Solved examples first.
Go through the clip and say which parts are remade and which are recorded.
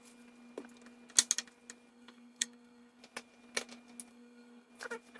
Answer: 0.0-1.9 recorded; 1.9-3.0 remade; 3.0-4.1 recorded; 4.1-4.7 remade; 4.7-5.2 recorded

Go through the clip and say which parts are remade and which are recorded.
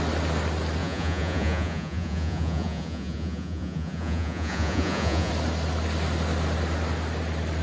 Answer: 0.0-0.8 recorded; 0.8-5.3 remade; 5.3-7.6 recorded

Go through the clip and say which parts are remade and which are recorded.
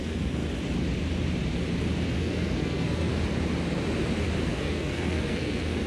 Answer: 0.0-0.4 remade; 0.4-2.1 recorded; 2.1-3.1 remade; 3.1-4.4 recorded; 4.4-5.9 remade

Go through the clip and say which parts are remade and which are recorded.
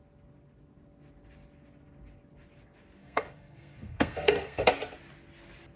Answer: 0.0-3.0 recorded; 3.0-4.7 remade; 4.7-5.8 recorded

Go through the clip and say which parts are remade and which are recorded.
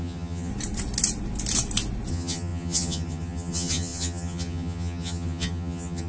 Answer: 0.0-0.5 remade; 0.5-2.1 recorded; 2.1-6.1 remade